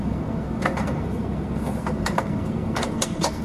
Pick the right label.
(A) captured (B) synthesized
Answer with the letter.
B